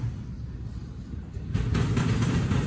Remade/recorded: recorded